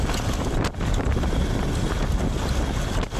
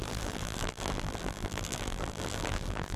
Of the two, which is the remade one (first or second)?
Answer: second